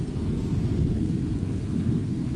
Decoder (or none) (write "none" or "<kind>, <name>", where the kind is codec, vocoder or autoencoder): codec, SNAC